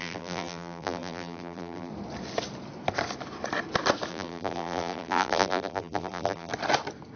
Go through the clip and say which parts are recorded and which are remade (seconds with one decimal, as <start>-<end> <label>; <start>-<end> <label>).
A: 0.0-1.9 remade; 1.9-4.1 recorded; 4.1-6.5 remade; 6.5-7.2 recorded

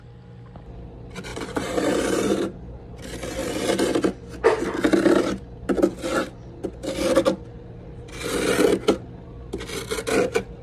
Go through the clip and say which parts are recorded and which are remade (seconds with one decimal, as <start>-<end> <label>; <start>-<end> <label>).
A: 0.0-1.3 recorded; 1.3-2.8 remade; 2.8-10.6 recorded

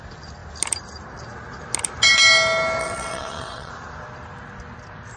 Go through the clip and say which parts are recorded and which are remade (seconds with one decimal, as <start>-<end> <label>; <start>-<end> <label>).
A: 0.0-2.8 recorded; 2.8-3.7 remade; 3.7-5.2 recorded

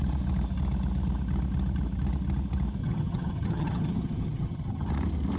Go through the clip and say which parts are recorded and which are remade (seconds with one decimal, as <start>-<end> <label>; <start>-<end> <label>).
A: 0.0-2.8 recorded; 2.8-4.9 remade; 4.9-5.4 recorded

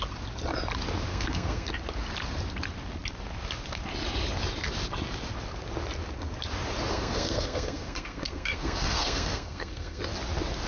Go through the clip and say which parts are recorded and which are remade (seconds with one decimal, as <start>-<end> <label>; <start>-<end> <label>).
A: 0.0-1.1 recorded; 1.1-1.7 remade; 1.7-6.9 recorded; 6.9-10.0 remade; 10.0-10.7 recorded

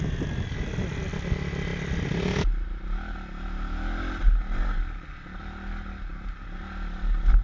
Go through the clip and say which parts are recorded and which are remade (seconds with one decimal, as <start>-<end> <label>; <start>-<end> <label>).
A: 0.0-7.4 recorded